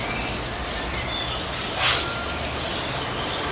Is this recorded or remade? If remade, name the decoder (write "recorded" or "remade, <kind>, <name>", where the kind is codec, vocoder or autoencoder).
recorded